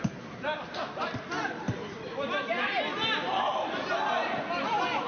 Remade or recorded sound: recorded